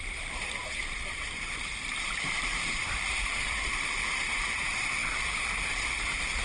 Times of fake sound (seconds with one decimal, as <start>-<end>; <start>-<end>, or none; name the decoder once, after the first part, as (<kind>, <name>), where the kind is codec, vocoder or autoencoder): 0.0-5.0 (vocoder, BigVGAN v2)